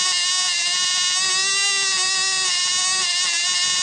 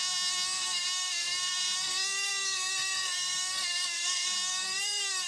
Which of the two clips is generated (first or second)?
second